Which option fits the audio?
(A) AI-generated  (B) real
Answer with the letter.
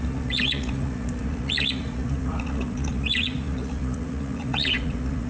A